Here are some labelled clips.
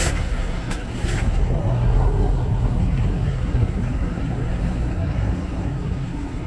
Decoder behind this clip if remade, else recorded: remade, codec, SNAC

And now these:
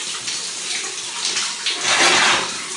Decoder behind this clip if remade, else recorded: recorded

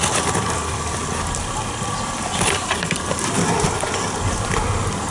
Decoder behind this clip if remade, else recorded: recorded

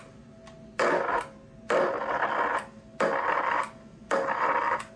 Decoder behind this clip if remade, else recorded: recorded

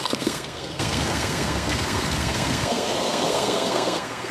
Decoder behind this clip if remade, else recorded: remade, codec, SNAC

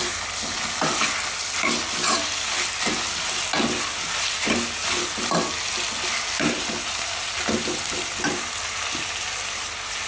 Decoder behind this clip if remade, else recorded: recorded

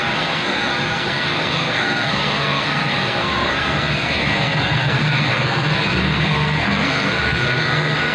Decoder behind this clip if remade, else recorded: remade, codec, SNAC